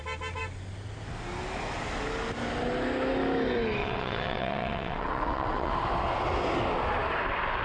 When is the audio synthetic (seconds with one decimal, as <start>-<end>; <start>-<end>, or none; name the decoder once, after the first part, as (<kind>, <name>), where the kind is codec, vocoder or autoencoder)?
3.8-5.7 (vocoder, WaveNeXt)